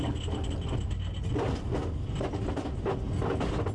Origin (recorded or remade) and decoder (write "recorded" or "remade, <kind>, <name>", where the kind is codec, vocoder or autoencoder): recorded